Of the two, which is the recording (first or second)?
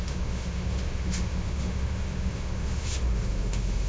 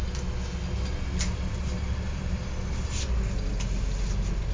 second